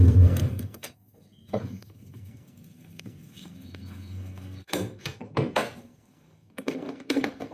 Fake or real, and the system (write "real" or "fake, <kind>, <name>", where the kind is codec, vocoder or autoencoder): fake, codec, SNAC